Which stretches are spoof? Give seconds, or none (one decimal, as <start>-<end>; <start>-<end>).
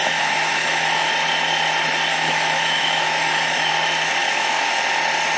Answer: 0.0-1.1; 2.1-3.7; 4.2-4.8